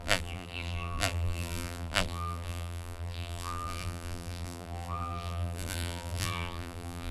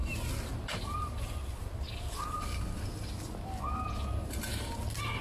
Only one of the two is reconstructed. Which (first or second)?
first